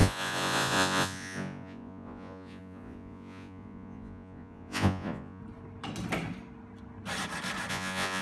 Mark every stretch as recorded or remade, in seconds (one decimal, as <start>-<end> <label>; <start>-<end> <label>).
0.0-5.4 remade; 5.4-7.7 recorded; 7.7-8.2 remade